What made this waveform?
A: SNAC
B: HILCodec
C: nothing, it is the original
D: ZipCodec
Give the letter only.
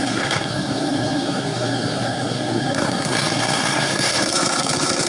A